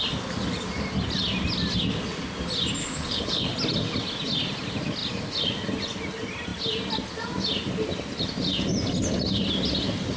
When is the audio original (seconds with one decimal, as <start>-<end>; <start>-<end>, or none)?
0.0-2.8; 3.5-10.2